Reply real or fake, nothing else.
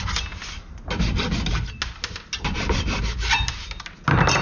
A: real